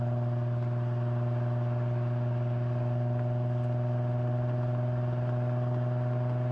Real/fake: real